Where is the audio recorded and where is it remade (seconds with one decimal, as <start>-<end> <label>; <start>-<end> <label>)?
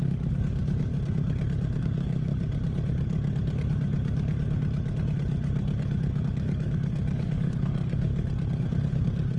0.0-0.9 remade; 0.9-1.8 recorded; 1.8-2.3 remade; 2.3-6.2 recorded; 6.2-8.1 remade; 8.1-9.4 recorded